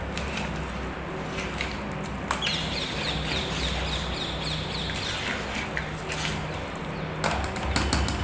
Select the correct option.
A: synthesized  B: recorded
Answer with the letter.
B